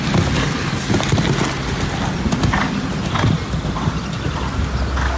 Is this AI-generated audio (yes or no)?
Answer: no